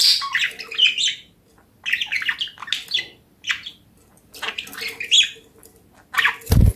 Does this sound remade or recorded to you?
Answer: recorded